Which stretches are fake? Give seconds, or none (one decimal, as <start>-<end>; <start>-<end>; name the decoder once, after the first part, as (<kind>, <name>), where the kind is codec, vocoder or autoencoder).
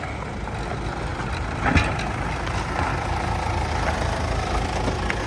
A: none